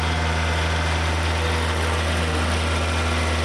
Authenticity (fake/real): real